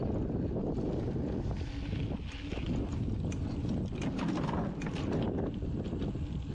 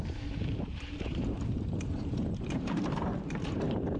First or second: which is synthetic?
second